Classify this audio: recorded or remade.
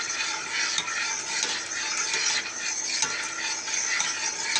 recorded